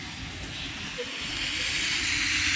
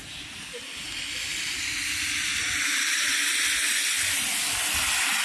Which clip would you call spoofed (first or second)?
second